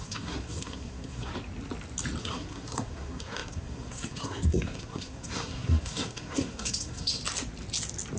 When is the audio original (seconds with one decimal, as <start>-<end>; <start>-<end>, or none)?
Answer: 1.3-2.2; 7.2-8.2